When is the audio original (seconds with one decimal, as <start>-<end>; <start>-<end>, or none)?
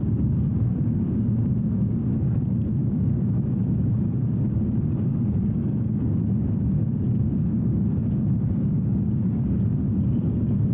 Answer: none